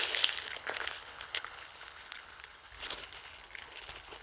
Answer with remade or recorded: remade